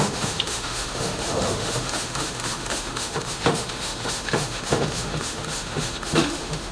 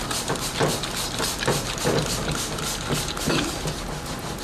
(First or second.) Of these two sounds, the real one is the second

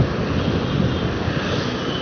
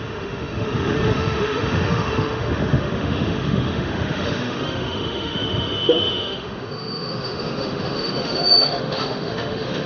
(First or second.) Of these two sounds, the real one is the first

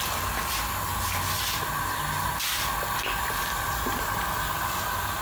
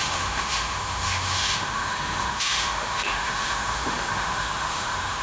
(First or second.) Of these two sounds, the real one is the first